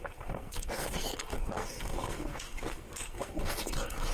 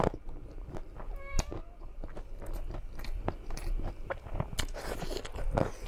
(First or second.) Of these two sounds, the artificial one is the first